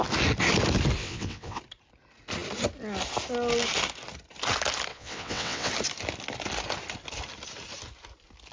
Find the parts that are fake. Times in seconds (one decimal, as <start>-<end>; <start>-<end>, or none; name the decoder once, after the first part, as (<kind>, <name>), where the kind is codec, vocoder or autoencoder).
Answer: 1.0-1.6 (vocoder, WaveNeXt); 4.9-5.7